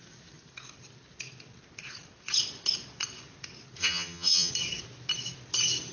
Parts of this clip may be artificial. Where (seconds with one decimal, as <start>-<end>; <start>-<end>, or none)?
3.8-4.5